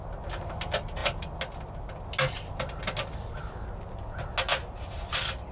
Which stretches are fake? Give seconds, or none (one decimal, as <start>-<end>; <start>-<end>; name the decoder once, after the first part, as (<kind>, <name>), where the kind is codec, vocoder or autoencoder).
none